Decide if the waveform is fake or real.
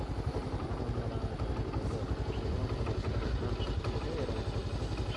real